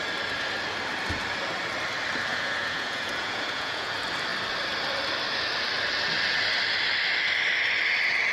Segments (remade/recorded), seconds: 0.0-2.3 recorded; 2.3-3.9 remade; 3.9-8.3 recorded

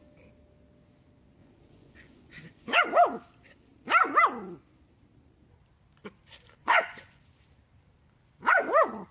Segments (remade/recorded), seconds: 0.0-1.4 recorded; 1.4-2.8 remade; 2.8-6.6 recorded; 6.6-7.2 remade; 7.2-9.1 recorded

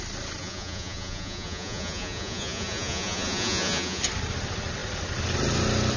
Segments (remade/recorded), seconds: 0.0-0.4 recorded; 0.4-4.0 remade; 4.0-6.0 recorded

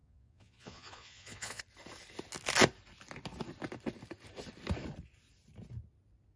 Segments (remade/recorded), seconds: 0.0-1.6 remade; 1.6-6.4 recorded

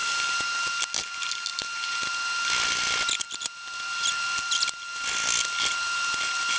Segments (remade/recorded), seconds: 0.0-6.6 recorded